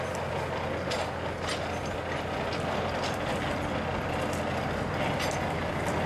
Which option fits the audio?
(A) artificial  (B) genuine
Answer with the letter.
B